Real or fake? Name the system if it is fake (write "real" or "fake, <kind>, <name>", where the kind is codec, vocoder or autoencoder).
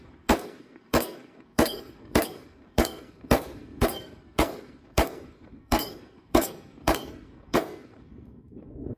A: fake, codec, SNAC